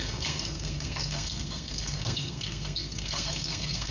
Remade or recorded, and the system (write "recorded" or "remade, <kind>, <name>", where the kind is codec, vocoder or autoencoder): remade, codec, SNAC